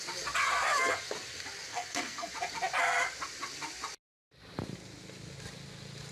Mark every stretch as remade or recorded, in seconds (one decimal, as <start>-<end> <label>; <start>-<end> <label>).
0.0-1.7 recorded; 1.7-2.3 remade; 2.3-6.1 recorded